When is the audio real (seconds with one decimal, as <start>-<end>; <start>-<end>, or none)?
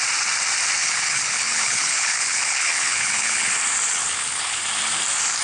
0.0-0.8; 3.5-4.0; 4.6-5.4